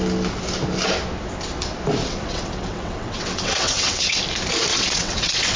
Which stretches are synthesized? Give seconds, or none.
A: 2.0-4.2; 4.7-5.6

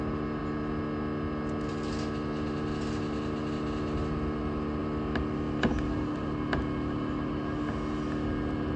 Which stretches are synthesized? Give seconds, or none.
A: none

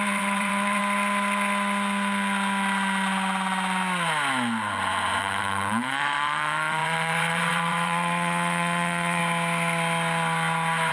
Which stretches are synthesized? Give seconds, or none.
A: 0.0-0.8; 5.2-9.2

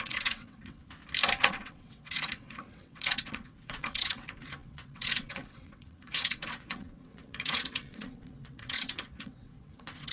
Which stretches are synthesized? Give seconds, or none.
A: 0.0-0.8; 1.4-10.1

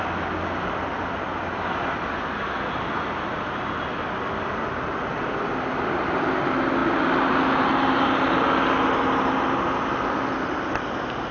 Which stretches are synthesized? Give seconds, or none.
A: none

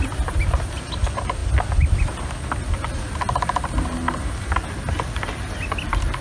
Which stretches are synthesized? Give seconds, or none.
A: none